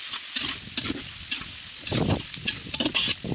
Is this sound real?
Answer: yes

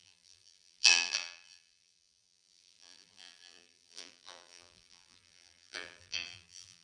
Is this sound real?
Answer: no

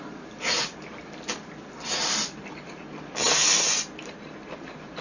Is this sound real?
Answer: no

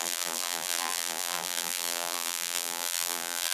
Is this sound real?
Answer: no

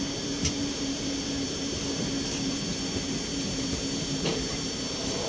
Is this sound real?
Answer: no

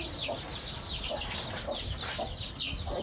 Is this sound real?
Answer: no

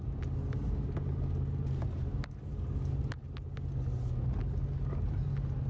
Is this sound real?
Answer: yes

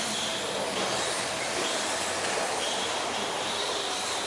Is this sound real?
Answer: no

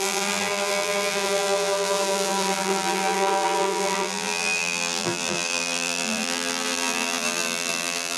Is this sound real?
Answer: no